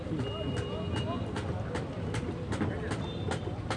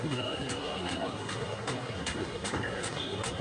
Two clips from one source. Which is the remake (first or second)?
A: second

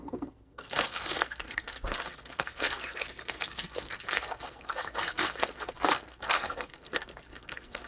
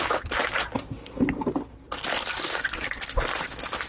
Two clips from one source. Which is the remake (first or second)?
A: first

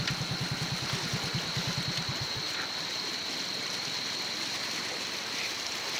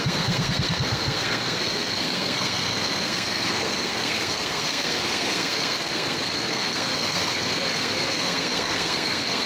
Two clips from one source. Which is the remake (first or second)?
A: second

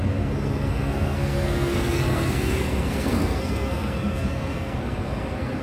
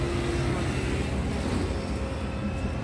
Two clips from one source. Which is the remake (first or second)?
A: first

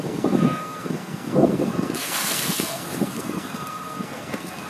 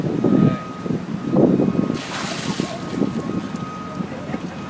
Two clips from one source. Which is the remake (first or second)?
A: first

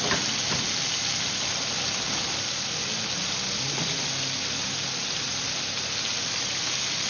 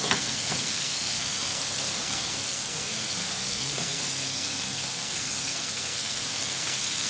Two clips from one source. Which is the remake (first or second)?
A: second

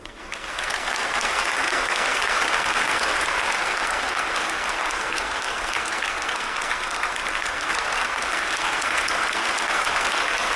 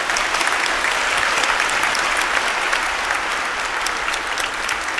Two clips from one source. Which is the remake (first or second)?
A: first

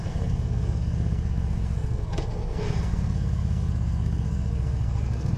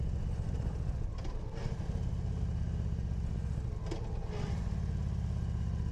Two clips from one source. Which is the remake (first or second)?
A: first